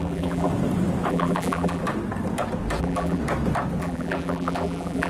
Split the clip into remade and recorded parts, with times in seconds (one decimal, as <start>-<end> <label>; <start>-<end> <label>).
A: 0.0-0.5 remade; 0.5-1.1 recorded; 1.1-1.8 remade; 1.8-2.8 recorded; 2.8-3.2 remade; 3.2-3.8 recorded; 3.8-5.1 remade